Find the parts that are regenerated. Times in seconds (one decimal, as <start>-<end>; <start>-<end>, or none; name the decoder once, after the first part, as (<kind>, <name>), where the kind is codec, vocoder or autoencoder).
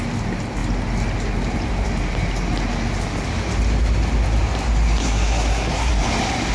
5.0-5.9 (codec, SNAC)